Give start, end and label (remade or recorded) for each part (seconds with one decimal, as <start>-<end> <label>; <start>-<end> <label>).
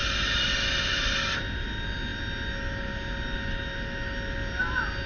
0.0-5.1 recorded